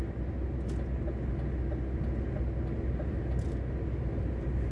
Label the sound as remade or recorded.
recorded